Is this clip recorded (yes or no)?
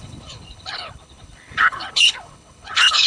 no